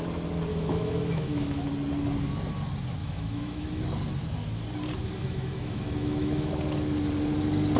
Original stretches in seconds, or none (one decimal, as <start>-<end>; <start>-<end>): 0.0-0.5; 1.7-3.0; 3.8-5.2; 6.5-7.8